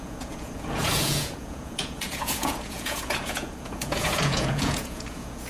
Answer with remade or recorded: remade